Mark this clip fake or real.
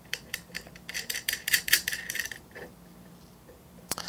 fake